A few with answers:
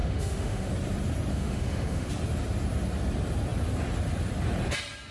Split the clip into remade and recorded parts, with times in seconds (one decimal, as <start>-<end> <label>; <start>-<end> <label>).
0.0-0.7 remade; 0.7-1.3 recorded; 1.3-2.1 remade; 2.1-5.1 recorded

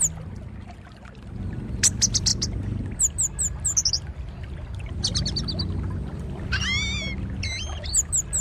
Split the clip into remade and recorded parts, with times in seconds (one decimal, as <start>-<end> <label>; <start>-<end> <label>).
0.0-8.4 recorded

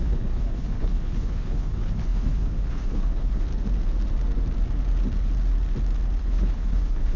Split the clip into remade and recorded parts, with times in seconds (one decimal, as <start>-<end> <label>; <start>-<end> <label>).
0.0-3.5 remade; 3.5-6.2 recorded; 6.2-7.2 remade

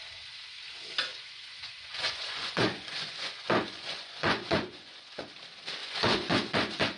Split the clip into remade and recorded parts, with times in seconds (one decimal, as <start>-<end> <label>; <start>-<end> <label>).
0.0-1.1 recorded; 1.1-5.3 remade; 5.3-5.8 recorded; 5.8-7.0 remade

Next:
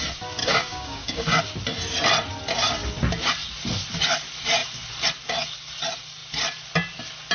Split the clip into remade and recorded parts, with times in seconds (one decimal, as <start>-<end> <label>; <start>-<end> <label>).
0.0-0.4 recorded; 0.4-1.4 remade; 1.4-7.3 recorded

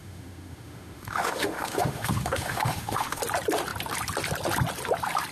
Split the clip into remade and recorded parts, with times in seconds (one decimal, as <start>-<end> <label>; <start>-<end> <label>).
0.0-3.2 remade; 3.2-5.3 recorded

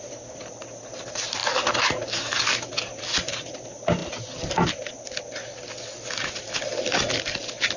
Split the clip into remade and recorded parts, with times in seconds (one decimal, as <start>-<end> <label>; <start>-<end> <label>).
0.0-7.8 recorded